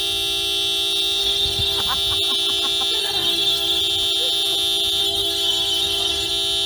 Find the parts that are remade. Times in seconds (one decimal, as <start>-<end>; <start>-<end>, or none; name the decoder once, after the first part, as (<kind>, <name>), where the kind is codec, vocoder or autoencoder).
1.2-1.8 (codec, SNAC); 3.0-3.8; 5.0-6.3